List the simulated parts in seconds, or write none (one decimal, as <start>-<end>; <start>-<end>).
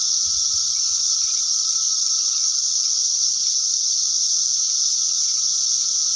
0.0-0.6; 4.3-6.2